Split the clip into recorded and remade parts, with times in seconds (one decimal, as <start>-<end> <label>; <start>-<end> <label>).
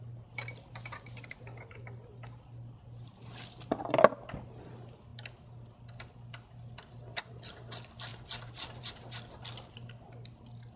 0.0-5.1 remade; 5.1-7.3 recorded; 7.3-8.1 remade; 8.1-8.8 recorded; 8.8-10.8 remade